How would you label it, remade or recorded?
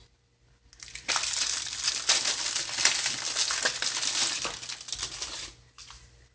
recorded